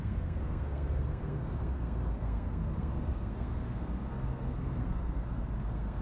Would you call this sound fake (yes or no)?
yes